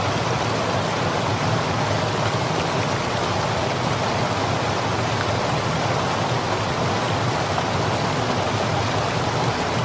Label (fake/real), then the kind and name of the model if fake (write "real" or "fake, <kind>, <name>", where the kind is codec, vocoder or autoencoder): real